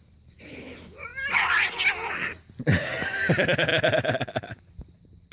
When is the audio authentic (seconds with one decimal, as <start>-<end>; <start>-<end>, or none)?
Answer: 0.0-5.3